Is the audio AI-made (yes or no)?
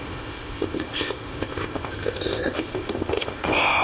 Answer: yes